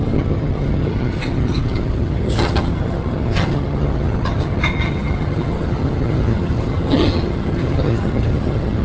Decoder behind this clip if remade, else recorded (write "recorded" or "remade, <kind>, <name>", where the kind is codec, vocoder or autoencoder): remade, vocoder, HiFi-GAN